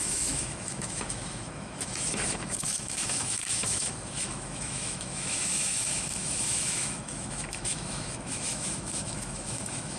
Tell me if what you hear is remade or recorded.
remade